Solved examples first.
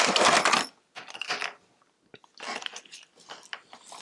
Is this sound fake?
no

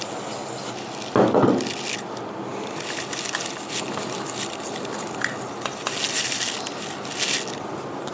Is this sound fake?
no